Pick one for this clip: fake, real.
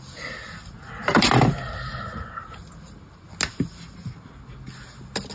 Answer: real